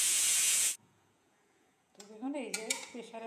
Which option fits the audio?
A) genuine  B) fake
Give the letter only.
B